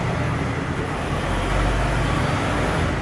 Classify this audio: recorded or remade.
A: recorded